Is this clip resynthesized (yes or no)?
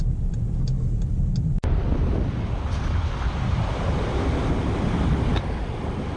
no